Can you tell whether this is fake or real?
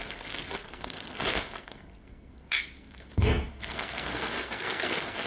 fake